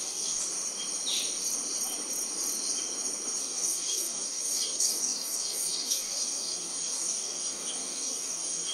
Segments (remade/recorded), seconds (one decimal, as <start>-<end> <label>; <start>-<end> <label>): 0.0-0.4 remade; 0.4-3.4 recorded; 3.4-8.7 remade